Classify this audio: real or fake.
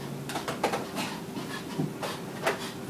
real